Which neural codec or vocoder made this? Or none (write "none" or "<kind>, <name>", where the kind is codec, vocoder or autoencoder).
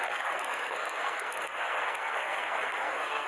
codec, SNAC